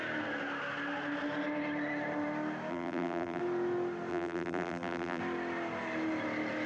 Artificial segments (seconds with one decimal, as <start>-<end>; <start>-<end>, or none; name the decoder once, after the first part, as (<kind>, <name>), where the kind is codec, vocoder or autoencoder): 2.7-3.4 (vocoder, BigVGAN v2); 4.1-5.2